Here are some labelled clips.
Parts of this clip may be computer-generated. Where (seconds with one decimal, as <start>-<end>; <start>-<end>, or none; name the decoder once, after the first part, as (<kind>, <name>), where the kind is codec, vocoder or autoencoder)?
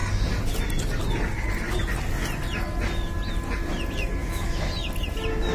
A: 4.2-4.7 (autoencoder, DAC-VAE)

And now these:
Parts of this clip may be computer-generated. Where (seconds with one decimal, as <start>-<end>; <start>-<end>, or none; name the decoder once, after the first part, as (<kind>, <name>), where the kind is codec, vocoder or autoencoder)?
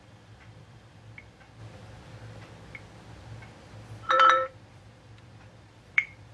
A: 0.0-1.6 (vocoder, BigVGAN v2); 4.1-6.3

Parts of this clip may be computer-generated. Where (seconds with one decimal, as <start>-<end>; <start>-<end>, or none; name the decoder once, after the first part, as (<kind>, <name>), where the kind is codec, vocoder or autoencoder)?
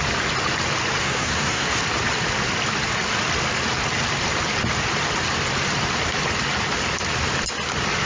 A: 1.0-1.8 (codec, SNAC)